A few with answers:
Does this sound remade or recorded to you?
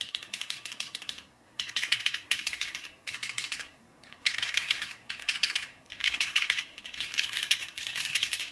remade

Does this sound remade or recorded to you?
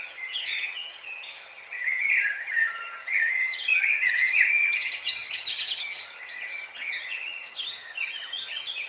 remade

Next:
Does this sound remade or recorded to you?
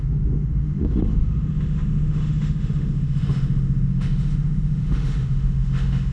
remade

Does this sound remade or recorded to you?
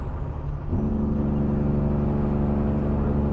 recorded